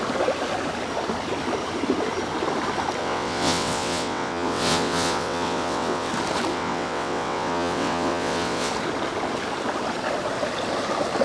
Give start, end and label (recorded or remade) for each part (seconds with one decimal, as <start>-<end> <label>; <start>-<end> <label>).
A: 0.0-3.0 recorded; 3.0-6.1 remade; 6.1-6.5 recorded; 6.5-8.7 remade; 8.7-11.2 recorded